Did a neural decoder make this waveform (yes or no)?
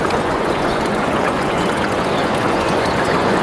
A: yes